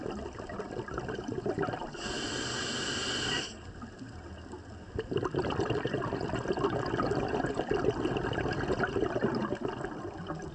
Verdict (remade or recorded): recorded